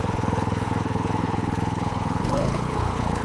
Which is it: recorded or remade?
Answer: remade